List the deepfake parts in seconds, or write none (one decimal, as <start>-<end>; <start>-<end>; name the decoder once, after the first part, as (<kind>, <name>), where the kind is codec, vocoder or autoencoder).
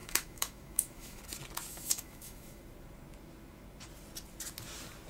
0.0-1.2 (autoencoder, DAC-VAE); 1.7-2.6